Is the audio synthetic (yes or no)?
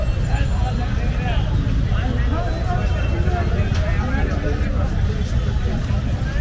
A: no